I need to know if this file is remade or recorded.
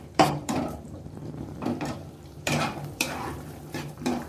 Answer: remade